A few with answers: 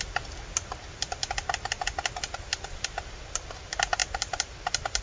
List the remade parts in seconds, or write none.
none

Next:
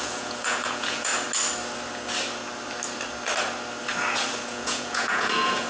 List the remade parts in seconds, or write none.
0.0-1.1; 4.5-5.7

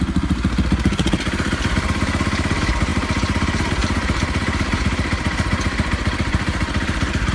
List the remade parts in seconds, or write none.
2.9-7.3